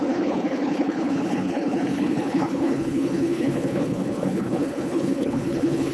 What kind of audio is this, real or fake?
fake